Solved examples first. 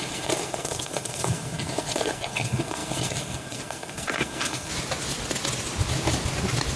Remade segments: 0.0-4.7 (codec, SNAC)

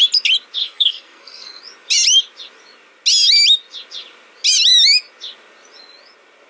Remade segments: 0.6-1.6 (codec, SNAC)

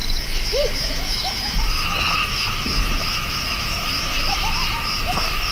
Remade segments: 0.0-5.5 (autoencoder, DAC-VAE)

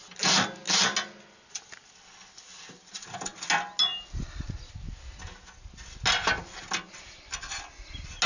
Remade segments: none